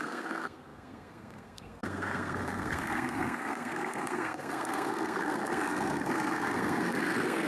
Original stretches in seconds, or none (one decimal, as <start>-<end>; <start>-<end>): none